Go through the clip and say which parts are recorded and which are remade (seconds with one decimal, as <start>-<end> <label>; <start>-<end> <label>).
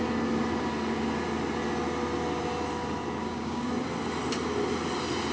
0.0-3.2 recorded; 3.2-3.7 remade; 3.7-5.3 recorded